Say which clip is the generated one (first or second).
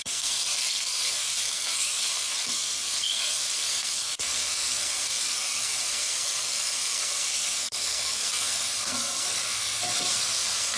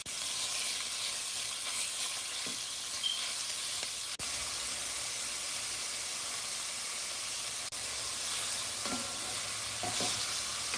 first